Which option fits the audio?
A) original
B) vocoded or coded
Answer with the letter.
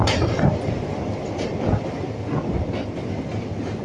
A